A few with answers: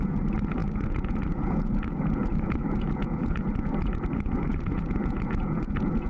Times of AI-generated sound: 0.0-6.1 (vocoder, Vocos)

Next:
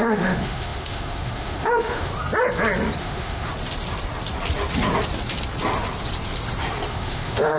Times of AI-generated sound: 0.0-2.1 (autoencoder, DAC-VAE); 3.0-3.5; 6.9-7.6